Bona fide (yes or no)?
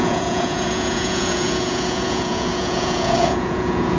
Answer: no